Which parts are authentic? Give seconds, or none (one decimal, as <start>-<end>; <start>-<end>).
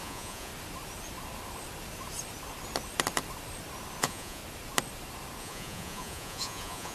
0.5-4.0; 4.4-5.4